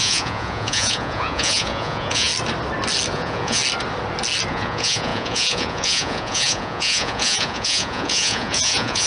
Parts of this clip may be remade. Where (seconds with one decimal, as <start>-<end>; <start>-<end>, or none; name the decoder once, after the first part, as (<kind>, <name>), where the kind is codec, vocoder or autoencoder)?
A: 0.0-2.3 (vocoder, Vocos); 3.1-3.6; 4.5-9.1